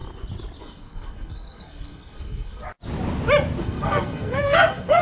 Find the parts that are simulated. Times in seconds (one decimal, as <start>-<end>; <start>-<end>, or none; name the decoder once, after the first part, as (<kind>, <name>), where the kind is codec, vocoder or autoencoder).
0.6-2.6 (codec, SNAC); 3.6-5.0